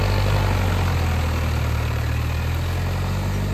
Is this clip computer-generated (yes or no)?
no